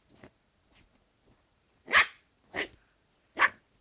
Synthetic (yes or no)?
yes